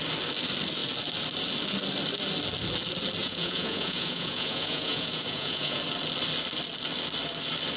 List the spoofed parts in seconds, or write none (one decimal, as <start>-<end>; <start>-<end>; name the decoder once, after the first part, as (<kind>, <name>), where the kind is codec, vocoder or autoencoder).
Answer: 3.2-5.8 (vocoder, Vocos)